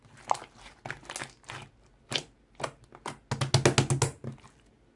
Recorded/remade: recorded